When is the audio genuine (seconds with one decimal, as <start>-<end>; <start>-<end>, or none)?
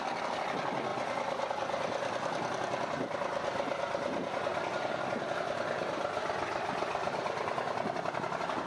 0.0-4.5; 7.6-8.7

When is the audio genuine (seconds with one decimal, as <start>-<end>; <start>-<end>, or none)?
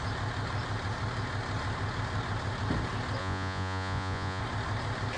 0.0-3.2; 4.4-5.2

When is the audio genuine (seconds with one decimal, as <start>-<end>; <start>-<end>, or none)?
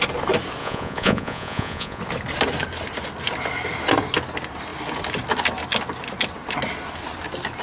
0.0-0.6; 2.0-7.6